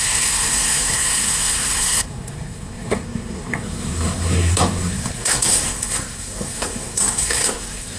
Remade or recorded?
remade